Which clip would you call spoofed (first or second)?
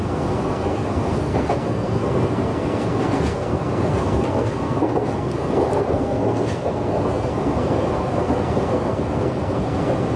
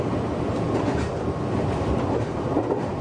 first